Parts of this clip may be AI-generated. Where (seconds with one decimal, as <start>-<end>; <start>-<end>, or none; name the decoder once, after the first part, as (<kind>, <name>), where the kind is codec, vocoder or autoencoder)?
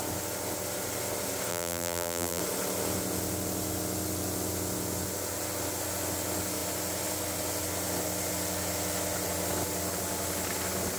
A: 1.5-2.4 (vocoder, BigVGAN v2)